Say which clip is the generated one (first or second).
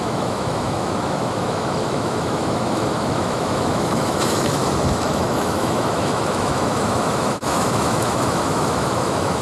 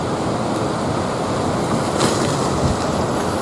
first